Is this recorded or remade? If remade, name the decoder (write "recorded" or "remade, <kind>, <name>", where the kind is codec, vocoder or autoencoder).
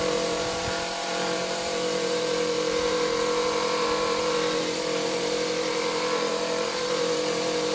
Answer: remade, vocoder, BigVGAN v2